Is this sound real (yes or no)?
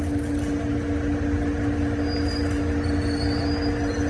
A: yes